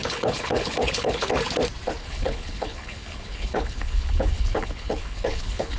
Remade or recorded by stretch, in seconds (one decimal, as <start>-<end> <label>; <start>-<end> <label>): 0.0-1.3 remade; 1.3-2.0 recorded; 2.0-5.8 remade